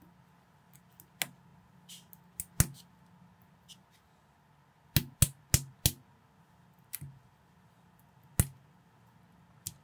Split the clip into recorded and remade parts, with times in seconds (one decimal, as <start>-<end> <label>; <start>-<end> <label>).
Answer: 0.0-9.8 recorded